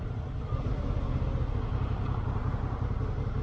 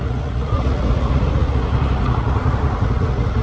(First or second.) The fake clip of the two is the second